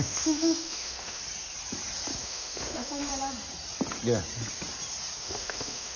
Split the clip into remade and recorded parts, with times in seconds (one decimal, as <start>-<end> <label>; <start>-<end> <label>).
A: 0.0-1.2 remade; 1.2-2.2 recorded; 2.2-3.1 remade; 3.1-5.2 recorded; 5.2-6.0 remade

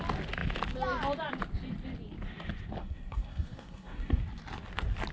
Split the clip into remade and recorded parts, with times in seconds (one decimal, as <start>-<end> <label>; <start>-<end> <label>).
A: 0.0-2.8 recorded; 2.8-4.2 remade; 4.2-5.1 recorded

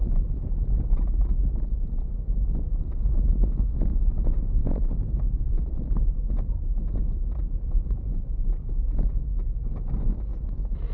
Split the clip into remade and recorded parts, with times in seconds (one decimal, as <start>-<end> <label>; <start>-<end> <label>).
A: 0.0-4.6 recorded; 4.6-8.7 remade; 8.7-10.9 recorded